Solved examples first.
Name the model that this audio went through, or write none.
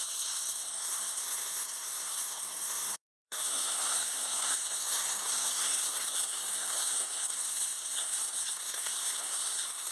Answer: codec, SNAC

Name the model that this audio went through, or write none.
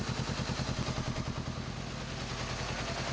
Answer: none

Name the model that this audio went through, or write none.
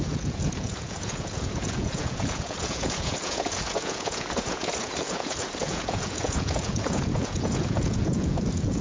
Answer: vocoder, Vocos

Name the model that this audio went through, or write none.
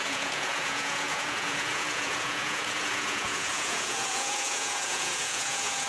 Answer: vocoder, Vocos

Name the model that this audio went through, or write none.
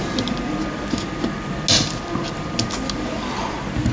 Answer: none